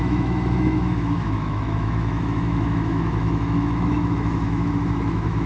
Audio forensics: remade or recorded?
remade